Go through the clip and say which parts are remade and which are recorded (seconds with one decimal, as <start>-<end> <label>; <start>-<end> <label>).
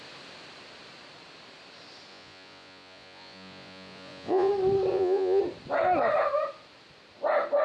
0.0-2.1 recorded; 2.1-4.5 remade; 4.5-4.9 recorded; 4.9-5.4 remade; 5.4-7.6 recorded